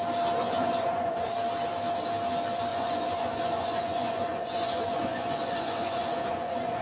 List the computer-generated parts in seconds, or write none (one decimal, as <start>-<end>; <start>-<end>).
0.4-1.3; 2.7-6.8